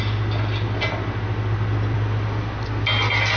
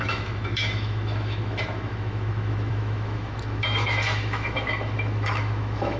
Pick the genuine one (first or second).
first